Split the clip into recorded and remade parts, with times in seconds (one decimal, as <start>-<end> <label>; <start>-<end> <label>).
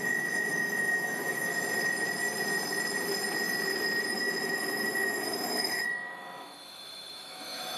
0.0-1.5 remade; 1.5-4.1 recorded; 4.1-7.8 remade